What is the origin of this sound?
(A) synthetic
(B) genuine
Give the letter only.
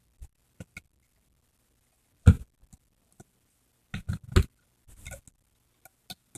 B